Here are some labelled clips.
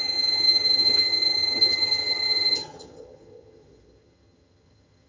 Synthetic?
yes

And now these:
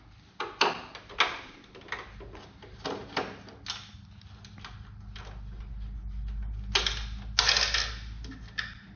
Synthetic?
no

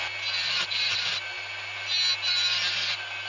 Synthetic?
no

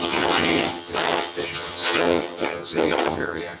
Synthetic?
yes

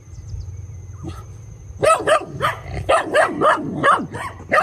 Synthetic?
no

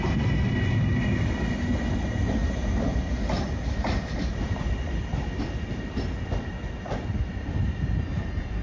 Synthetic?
no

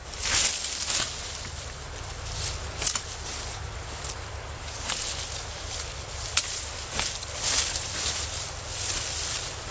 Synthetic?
no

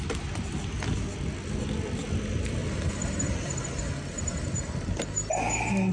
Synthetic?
no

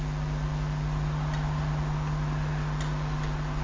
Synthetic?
no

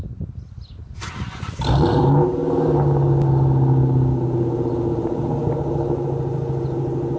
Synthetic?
no